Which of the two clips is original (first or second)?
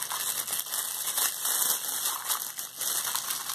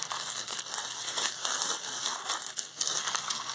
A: first